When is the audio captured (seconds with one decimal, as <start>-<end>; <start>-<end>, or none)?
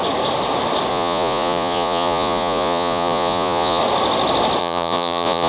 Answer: 0.0-0.9; 3.8-4.6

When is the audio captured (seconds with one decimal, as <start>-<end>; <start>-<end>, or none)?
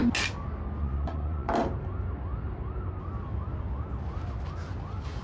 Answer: 0.0-0.8; 1.5-5.2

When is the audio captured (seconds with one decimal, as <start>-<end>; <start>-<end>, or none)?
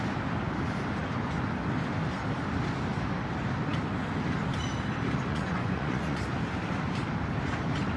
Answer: 0.0-5.3; 6.2-8.0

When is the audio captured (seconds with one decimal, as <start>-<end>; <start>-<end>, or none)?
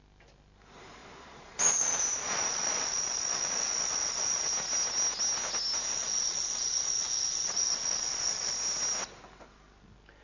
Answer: 0.0-1.0; 4.5-5.9; 8.5-10.2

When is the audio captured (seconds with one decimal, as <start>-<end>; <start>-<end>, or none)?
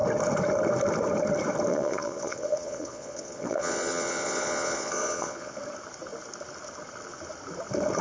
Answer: 0.0-1.7; 5.6-8.0